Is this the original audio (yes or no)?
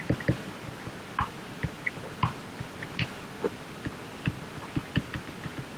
yes